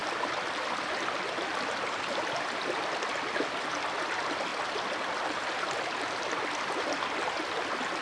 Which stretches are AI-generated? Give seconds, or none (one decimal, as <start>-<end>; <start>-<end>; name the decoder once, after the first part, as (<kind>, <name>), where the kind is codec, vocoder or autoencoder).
none